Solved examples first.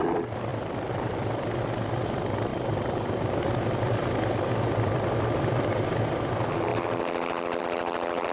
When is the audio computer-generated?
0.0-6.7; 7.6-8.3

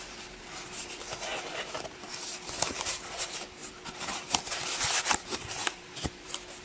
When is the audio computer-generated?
0.0-6.6

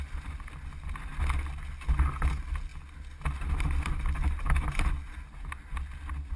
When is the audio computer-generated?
none

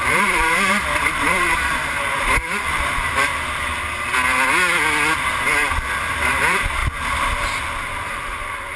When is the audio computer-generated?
0.0-3.3; 6.0-6.8; 7.8-8.8

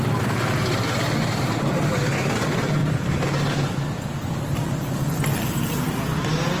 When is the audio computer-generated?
none

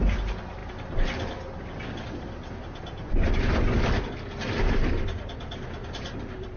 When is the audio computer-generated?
none